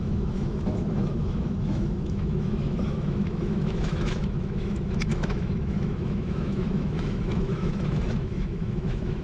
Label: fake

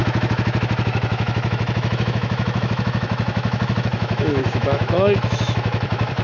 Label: fake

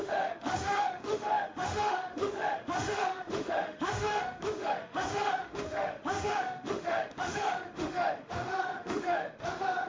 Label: fake